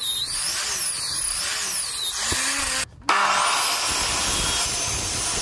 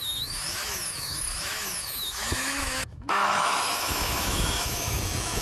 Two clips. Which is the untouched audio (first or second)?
first